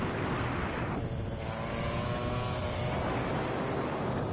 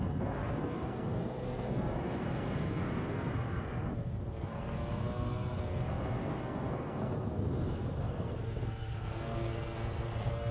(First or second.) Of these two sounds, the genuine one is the first